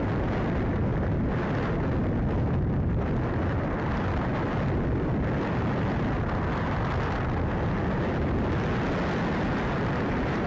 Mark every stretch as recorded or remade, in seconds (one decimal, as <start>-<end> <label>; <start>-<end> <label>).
0.0-10.5 recorded